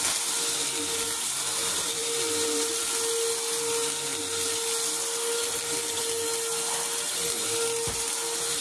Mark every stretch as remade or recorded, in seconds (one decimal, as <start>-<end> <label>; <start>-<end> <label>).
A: 0.0-8.6 recorded

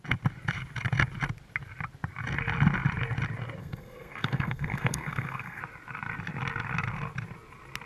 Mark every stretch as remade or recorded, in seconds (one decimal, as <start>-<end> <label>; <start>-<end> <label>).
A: 0.0-3.6 recorded; 3.6-5.6 remade; 5.6-7.9 recorded

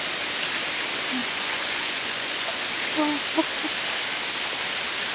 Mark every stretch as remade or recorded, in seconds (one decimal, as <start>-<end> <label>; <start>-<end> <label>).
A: 0.0-1.2 recorded; 1.2-2.6 remade; 2.6-5.1 recorded

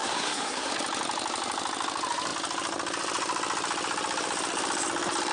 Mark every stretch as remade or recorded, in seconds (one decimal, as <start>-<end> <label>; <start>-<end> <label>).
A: 0.0-0.7 remade; 0.7-5.3 recorded

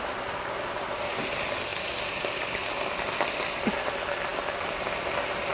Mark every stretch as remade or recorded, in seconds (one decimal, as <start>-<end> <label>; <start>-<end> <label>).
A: 0.0-5.5 recorded

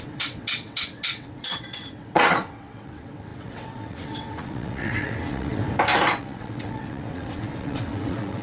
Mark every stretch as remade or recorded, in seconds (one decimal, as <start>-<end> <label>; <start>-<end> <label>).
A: 0.0-5.6 remade; 5.6-6.2 recorded; 6.2-8.4 remade